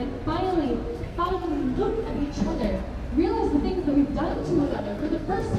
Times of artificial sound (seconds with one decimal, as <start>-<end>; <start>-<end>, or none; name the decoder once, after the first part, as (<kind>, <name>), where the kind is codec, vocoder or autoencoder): 0.9-2.8 (codec, SNAC); 4.3-5.6